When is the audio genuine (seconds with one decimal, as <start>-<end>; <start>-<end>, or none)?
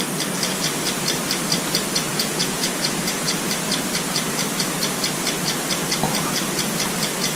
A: 0.0-2.1; 3.4-7.4